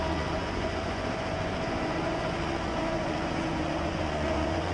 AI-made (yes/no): yes